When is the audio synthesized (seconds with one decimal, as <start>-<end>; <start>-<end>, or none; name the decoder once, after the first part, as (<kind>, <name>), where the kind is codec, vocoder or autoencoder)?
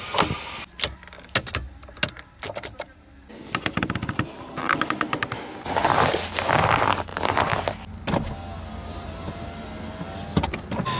none